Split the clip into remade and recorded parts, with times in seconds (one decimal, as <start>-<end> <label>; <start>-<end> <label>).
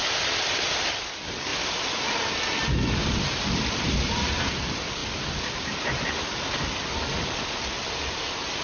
0.0-8.6 recorded